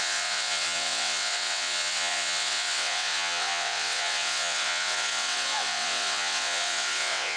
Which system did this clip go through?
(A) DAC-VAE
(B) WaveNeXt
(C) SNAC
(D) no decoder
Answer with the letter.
B